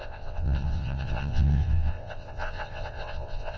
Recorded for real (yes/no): no